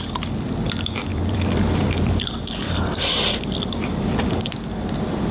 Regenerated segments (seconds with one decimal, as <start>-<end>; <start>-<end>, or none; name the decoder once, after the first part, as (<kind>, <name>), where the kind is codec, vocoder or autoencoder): 1.1-4.3 (vocoder, BigVGAN v2)